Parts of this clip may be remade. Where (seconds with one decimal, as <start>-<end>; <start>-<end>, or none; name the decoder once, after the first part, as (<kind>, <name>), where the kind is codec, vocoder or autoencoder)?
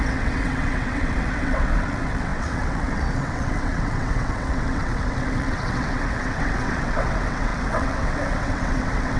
0.0-9.2 (vocoder, WaveNeXt)